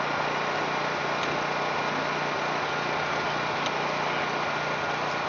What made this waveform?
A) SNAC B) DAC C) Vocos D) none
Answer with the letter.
D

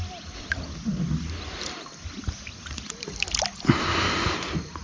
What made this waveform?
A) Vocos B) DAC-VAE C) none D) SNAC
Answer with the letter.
C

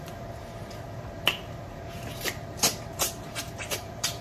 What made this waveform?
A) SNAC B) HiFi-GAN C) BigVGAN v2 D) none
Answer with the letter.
C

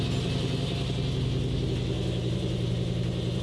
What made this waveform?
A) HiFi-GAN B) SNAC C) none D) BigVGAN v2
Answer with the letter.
C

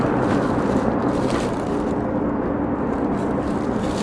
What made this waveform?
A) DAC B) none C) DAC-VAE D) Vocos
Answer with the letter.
B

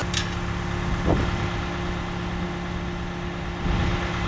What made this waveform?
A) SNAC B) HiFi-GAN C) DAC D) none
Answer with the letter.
D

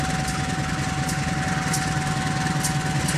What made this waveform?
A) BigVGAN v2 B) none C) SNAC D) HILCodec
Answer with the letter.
B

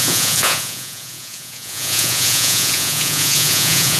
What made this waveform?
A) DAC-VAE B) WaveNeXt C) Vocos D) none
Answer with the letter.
C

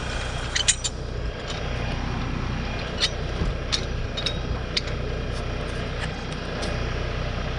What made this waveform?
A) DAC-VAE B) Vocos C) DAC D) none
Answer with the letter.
D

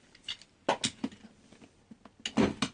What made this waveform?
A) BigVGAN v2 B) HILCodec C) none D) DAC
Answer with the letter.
C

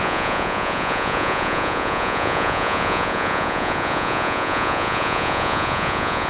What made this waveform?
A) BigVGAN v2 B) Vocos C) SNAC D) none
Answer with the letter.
B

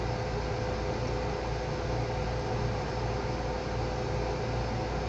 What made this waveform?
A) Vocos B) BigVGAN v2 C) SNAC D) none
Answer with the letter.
D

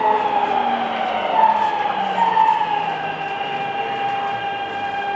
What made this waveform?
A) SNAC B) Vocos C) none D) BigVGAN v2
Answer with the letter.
C